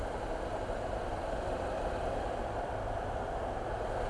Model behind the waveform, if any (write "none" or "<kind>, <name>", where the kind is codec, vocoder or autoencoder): vocoder, BigVGAN v2